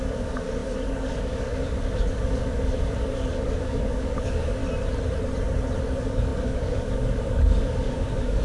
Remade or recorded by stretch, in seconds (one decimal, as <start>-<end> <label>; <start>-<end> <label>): 0.0-4.6 remade; 4.6-5.8 recorded; 5.8-8.4 remade